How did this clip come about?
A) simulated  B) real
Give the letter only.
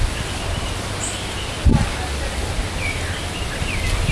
B